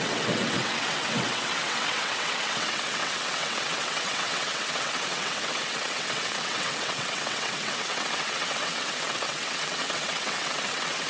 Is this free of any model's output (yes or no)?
no